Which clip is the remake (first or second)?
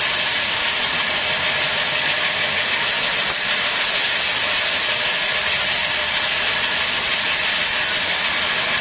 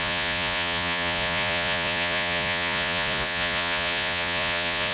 second